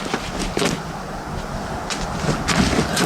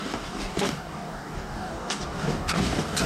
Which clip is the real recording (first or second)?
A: first